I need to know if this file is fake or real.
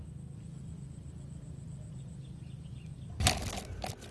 real